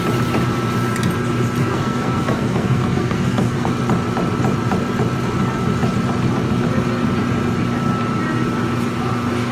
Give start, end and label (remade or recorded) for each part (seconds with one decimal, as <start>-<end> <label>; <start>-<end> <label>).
0.0-1.6 recorded; 1.6-3.7 remade; 3.7-9.5 recorded